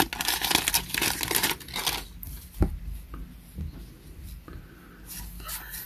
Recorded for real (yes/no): yes